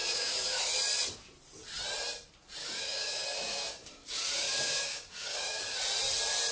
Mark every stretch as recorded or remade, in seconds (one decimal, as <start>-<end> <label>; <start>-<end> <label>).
0.0-0.6 remade; 0.6-2.6 recorded; 2.6-5.6 remade; 5.6-6.5 recorded